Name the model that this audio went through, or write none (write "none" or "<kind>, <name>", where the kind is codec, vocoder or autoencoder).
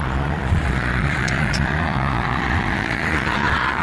vocoder, Vocos